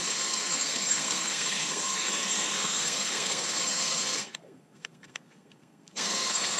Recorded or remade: remade